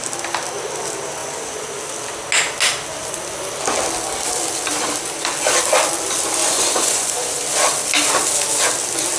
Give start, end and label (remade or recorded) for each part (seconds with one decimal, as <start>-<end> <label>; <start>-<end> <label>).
0.0-1.2 recorded; 1.2-1.8 remade; 1.8-6.4 recorded; 6.4-7.4 remade; 7.4-9.2 recorded